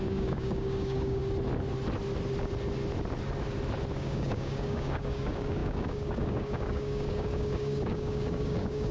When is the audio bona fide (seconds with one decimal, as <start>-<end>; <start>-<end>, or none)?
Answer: 1.2-3.9